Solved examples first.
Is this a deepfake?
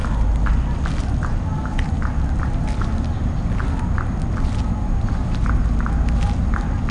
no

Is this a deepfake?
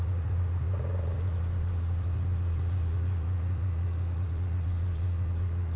yes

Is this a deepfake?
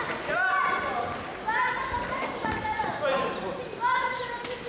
no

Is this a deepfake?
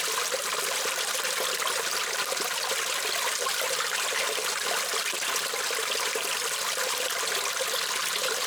no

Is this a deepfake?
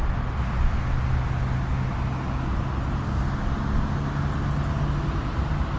no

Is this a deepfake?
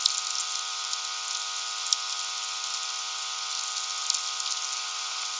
no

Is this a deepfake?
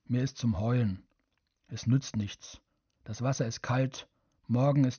no